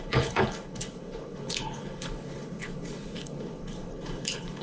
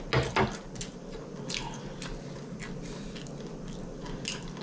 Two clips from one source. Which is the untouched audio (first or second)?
second